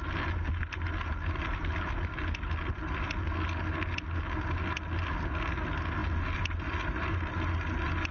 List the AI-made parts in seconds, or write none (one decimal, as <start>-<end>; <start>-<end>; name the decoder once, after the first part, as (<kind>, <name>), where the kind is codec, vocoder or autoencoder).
none